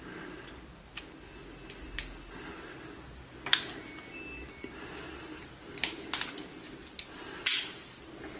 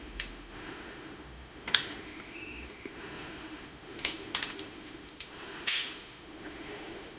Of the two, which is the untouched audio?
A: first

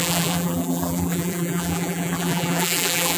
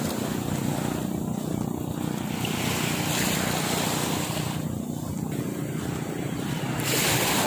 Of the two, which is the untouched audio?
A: second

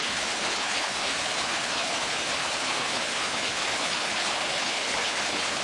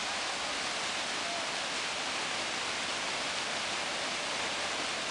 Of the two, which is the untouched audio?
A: second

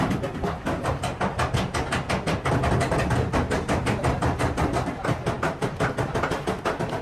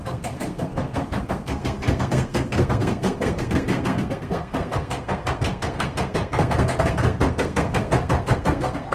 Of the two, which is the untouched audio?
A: first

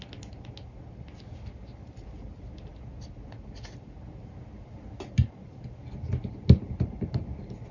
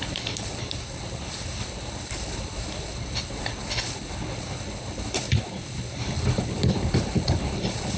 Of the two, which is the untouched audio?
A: first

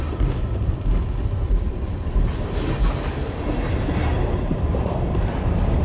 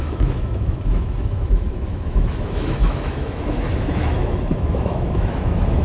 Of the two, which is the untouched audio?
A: first